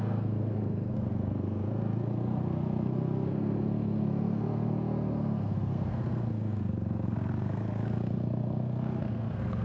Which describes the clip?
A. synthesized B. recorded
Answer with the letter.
A